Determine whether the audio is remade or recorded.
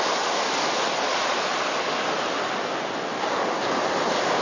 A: recorded